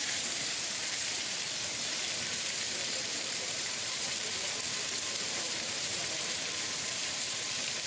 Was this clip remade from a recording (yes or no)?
yes